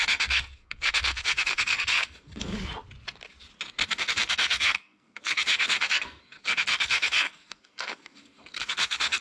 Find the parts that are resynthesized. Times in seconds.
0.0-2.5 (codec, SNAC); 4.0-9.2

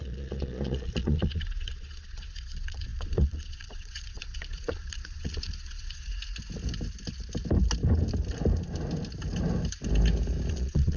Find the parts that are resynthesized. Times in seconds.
0.0-6.1 (vocoder, Vocos); 10.5-11.0

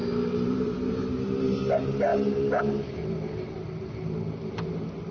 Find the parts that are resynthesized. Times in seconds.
0.0-1.0 (vocoder, BigVGAN v2)

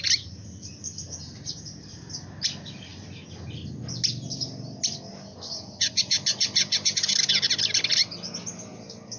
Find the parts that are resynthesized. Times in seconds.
none

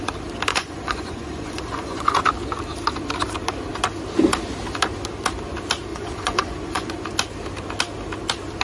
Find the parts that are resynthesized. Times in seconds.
0.5-2.2 (vocoder, Vocos); 5.9-6.9

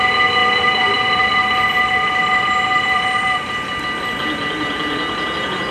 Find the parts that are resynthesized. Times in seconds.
0.4-3.7 (vocoder, BigVGAN v2)

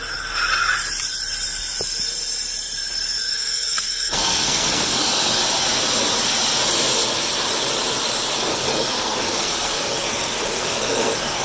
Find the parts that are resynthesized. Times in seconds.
3.3-5.4 (codec, SNAC); 8.5-11.4

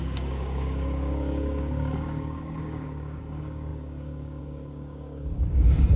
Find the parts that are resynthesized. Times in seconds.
0.0-6.0 (codec, DAC)